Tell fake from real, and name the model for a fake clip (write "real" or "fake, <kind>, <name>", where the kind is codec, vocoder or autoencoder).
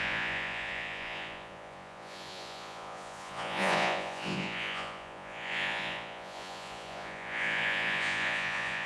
fake, vocoder, Vocos